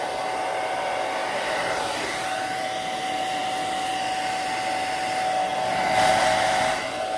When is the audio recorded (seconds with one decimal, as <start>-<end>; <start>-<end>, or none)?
0.0-1.2; 1.9-7.2